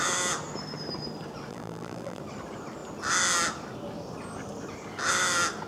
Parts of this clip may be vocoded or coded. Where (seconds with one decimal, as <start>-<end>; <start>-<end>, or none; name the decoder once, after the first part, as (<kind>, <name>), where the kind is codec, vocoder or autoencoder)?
1.5-2.2 (vocoder, BigVGAN v2)